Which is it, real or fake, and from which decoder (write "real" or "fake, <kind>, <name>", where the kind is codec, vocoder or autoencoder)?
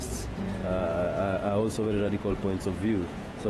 fake, vocoder, Vocos